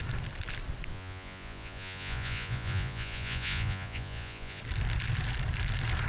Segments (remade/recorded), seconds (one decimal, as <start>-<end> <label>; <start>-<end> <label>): 0.0-0.9 recorded; 0.9-4.6 remade; 4.6-6.1 recorded